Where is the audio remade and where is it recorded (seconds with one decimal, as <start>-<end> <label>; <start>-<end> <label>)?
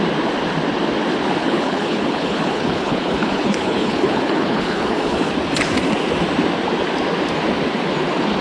0.0-1.4 recorded; 1.4-5.3 remade; 5.3-8.4 recorded